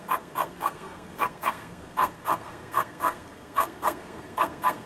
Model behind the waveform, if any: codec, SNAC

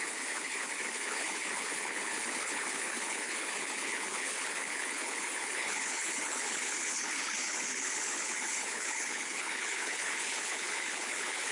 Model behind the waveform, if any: codec, HILCodec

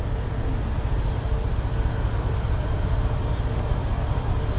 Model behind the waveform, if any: none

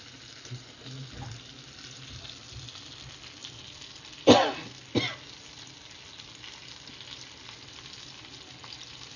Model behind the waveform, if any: none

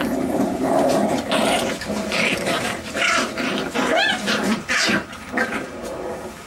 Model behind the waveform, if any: vocoder, BigVGAN v2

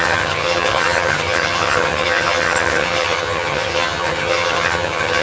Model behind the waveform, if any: vocoder, HiFi-GAN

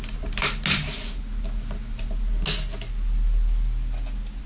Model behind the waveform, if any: none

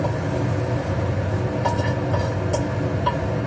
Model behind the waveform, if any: none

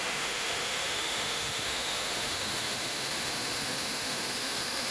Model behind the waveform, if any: autoencoder, DAC-VAE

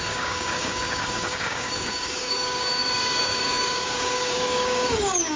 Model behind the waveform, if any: codec, DAC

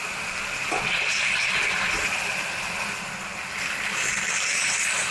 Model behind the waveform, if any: none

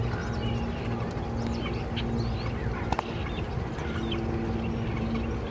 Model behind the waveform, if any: none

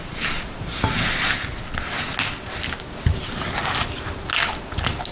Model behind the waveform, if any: none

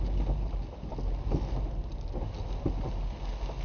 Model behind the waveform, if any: none